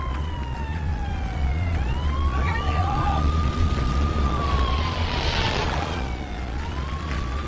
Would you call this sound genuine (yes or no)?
no